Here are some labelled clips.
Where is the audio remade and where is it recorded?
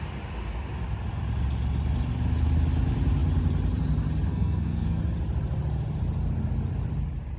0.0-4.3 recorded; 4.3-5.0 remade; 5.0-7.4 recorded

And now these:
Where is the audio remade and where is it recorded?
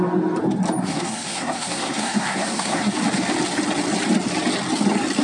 0.0-0.8 recorded; 0.8-2.9 remade; 2.9-5.2 recorded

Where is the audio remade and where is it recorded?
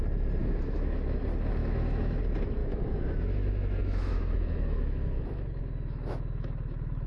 0.0-0.4 recorded; 0.4-1.2 remade; 1.2-1.6 recorded; 1.6-2.2 remade; 2.2-2.6 recorded; 2.6-7.1 remade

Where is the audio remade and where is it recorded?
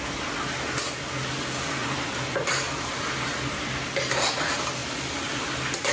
0.0-1.8 recorded; 1.8-3.1 remade; 3.1-4.8 recorded; 4.8-5.4 remade; 5.4-5.9 recorded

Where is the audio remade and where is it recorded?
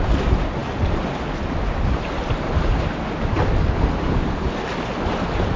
0.0-5.6 recorded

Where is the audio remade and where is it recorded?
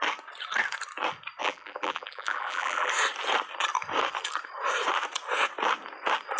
0.0-1.4 recorded; 1.4-2.9 remade; 2.9-6.4 recorded